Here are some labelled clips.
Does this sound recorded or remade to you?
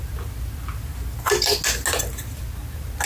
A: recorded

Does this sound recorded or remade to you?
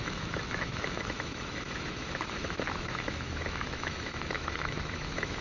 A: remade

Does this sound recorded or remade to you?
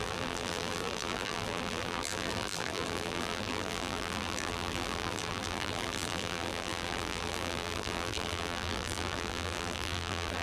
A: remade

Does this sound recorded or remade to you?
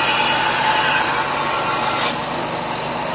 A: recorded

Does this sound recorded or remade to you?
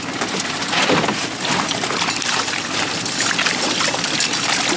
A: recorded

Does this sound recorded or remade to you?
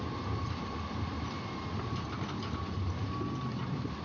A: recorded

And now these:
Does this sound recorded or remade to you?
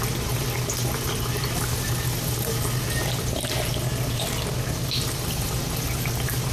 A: recorded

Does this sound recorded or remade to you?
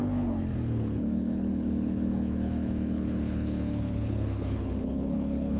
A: remade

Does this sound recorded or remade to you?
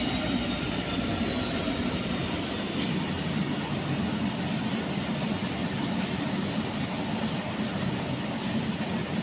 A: recorded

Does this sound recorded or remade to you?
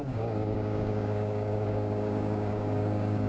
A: remade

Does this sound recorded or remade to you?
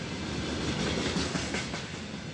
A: recorded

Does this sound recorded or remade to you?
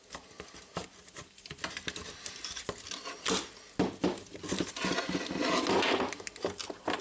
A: recorded